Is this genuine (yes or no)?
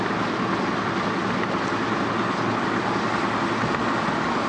yes